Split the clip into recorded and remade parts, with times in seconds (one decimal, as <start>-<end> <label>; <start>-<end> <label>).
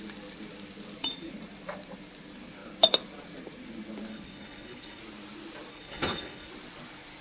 0.0-4.1 recorded; 4.1-5.0 remade; 5.0-5.7 recorded; 5.7-6.5 remade; 6.5-7.2 recorded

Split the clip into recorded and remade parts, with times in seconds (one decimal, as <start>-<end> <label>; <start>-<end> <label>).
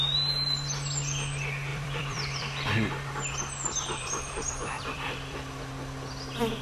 0.0-1.7 recorded; 1.7-5.7 remade; 5.7-6.6 recorded